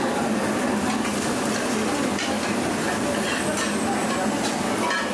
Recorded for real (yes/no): yes